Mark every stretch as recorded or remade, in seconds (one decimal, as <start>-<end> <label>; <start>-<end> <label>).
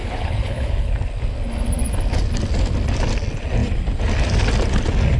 0.0-0.9 remade; 0.9-5.2 recorded